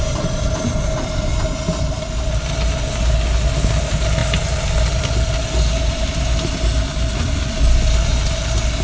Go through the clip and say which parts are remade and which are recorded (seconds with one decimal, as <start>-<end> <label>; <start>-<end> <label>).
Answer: 0.0-8.8 recorded